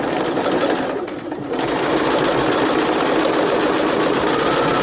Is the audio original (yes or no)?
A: yes